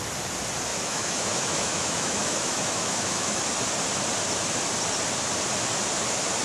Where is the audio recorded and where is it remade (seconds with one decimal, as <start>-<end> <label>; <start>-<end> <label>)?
0.0-0.7 recorded; 0.7-3.4 remade; 3.4-6.4 recorded